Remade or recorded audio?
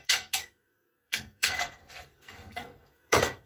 remade